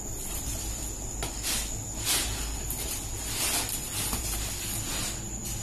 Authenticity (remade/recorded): recorded